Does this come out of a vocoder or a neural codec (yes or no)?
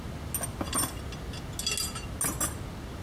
no